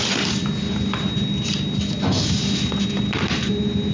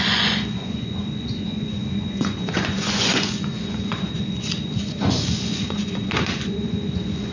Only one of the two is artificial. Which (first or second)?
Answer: second